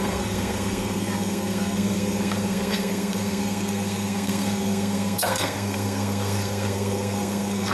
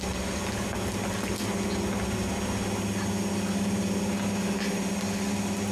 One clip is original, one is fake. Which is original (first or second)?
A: second